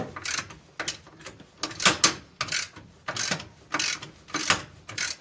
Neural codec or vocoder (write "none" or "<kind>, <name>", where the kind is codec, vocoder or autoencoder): none